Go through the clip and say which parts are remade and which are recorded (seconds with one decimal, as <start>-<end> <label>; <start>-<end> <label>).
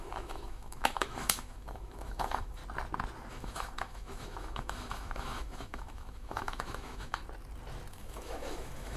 0.0-2.6 remade; 2.6-3.3 recorded; 3.3-7.2 remade; 7.2-7.9 recorded; 7.9-9.0 remade